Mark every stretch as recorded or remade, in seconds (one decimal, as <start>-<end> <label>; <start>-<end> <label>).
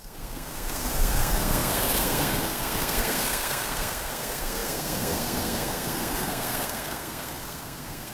0.0-8.1 remade